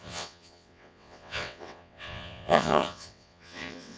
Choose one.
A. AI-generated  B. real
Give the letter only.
A